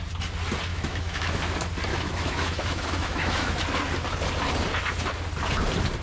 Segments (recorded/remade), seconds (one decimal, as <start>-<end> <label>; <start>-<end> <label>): 0.0-0.7 recorded; 0.7-1.4 remade; 1.4-1.9 recorded; 1.9-3.6 remade; 3.6-6.0 recorded